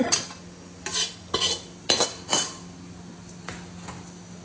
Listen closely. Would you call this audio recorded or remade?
recorded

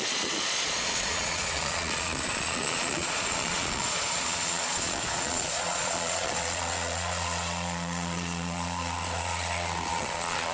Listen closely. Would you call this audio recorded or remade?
remade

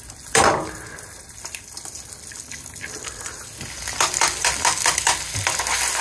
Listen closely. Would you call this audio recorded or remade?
recorded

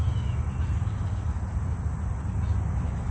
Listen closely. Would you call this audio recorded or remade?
recorded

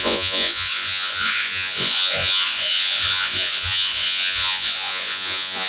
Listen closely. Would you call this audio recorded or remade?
remade